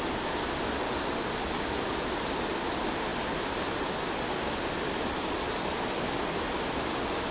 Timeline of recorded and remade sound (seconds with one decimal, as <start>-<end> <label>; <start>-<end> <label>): 0.0-7.3 recorded